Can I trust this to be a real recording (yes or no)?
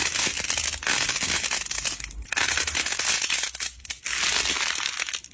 yes